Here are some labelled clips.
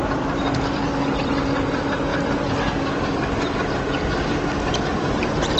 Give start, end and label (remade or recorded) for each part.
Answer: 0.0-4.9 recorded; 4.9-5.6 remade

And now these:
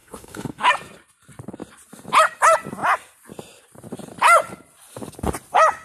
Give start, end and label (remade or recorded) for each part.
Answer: 0.0-0.7 remade; 0.7-5.8 recorded

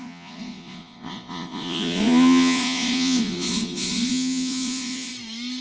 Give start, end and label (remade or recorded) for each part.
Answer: 0.0-5.1 remade; 5.1-5.6 recorded

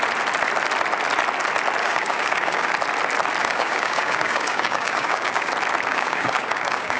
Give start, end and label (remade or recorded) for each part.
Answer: 0.0-1.8 recorded; 1.8-2.7 remade; 2.7-3.4 recorded; 3.4-5.5 remade; 5.5-5.9 recorded; 5.9-7.0 remade

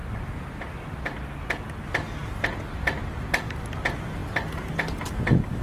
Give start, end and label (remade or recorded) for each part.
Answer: 0.0-5.6 recorded

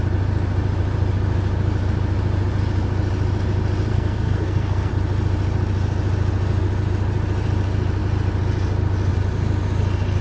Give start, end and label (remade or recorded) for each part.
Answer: 0.0-3.9 recorded; 3.9-4.9 remade; 4.9-10.2 recorded